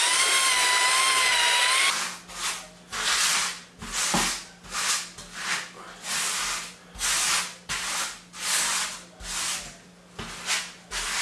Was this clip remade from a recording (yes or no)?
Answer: no